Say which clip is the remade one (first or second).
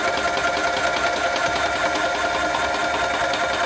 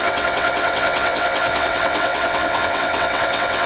second